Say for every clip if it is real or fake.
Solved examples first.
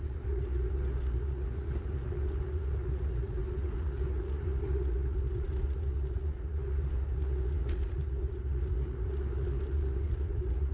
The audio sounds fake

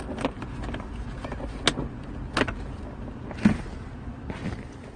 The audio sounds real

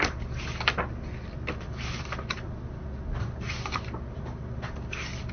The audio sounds real